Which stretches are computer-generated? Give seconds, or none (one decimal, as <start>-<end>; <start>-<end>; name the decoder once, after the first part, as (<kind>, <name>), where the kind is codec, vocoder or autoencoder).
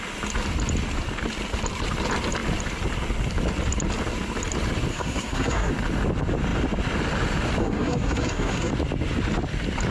4.9-5.7 (codec, SNAC); 7.6-8.7